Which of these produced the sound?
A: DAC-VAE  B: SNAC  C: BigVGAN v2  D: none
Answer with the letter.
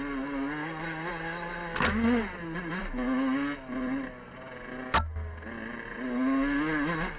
D